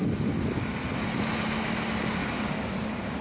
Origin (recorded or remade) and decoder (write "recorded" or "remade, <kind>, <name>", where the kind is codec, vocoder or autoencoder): recorded